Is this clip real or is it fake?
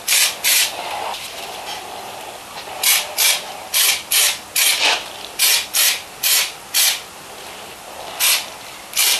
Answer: real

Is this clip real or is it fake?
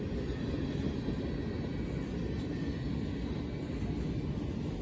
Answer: real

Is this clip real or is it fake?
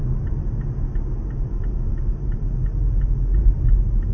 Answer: real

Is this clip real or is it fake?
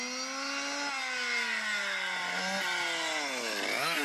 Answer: real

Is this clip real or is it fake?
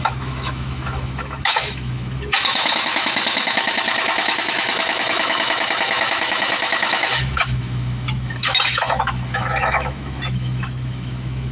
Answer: fake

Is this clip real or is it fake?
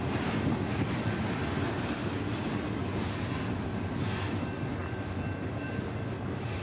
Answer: real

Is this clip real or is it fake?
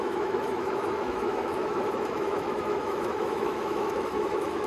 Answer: fake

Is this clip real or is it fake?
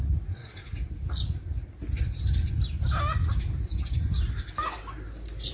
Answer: real